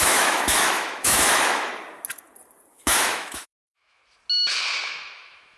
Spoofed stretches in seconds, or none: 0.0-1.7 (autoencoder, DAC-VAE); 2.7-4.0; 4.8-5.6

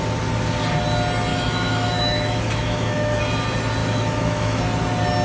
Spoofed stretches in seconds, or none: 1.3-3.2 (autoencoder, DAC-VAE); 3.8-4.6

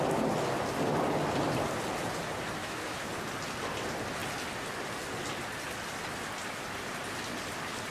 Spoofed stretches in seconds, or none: 2.6-3.1 (autoencoder, DAC-VAE)